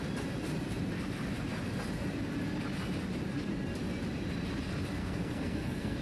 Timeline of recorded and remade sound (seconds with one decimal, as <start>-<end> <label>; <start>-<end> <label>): 0.0-5.0 recorded; 5.0-6.0 remade